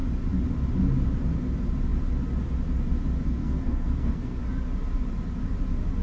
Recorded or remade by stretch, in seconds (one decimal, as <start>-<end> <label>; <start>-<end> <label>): 0.0-3.4 recorded; 3.4-4.4 remade; 4.4-6.0 recorded